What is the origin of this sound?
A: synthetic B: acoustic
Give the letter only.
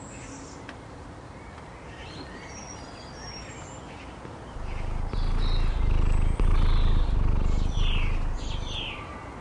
B